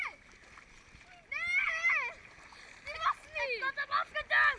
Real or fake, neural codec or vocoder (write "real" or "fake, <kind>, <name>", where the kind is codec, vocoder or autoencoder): real